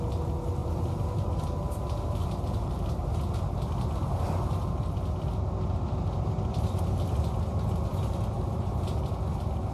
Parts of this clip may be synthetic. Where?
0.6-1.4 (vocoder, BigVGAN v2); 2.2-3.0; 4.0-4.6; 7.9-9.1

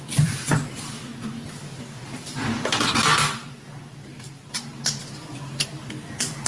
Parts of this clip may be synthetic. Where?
0.0-6.5 (vocoder, BigVGAN v2)

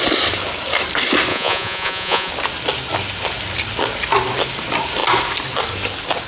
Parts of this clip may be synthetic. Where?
1.3-2.3 (vocoder, Vocos)